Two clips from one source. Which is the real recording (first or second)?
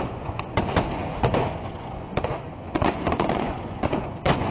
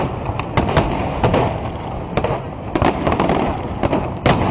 second